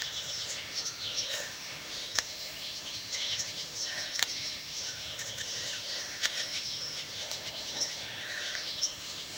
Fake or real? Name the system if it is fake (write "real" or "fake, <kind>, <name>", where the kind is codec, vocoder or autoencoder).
fake, autoencoder, DAC-VAE